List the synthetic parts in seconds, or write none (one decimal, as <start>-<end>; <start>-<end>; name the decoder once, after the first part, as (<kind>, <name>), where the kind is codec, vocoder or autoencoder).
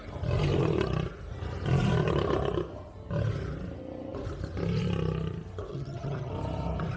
5.7-6.3 (vocoder, HiFi-GAN)